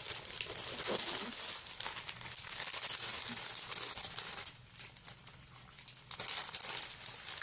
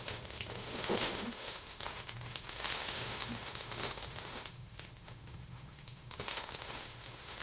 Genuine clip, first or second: first